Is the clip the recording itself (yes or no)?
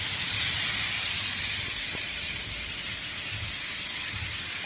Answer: yes